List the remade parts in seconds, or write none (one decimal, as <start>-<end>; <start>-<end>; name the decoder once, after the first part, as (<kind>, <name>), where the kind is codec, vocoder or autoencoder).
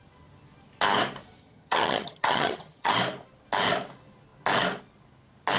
1.4-2.9 (vocoder, HiFi-GAN)